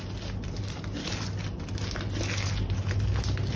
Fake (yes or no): no